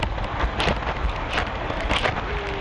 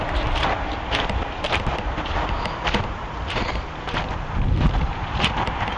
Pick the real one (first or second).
first